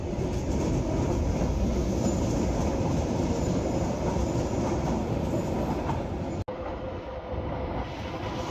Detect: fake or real real